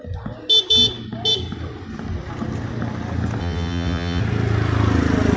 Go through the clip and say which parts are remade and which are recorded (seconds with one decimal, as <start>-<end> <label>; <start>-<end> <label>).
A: 0.0-3.4 recorded; 3.4-4.2 remade; 4.2-5.4 recorded